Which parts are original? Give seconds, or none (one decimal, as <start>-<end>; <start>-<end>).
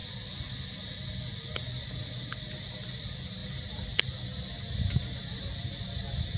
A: 0.0-6.4